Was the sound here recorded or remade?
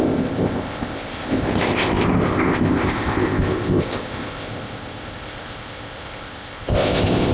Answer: remade